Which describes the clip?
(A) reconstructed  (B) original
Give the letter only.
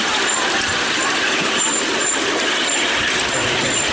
B